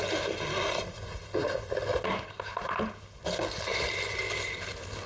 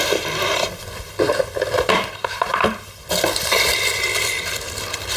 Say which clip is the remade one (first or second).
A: second